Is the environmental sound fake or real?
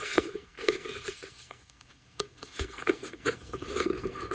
fake